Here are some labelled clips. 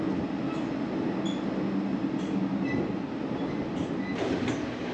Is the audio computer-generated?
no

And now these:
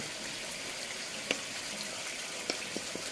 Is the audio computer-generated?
no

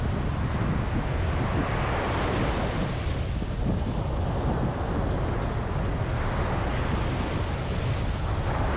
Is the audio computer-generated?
no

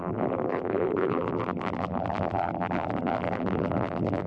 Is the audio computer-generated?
yes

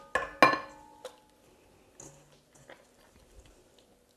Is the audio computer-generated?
no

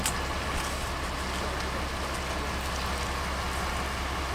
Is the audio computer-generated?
no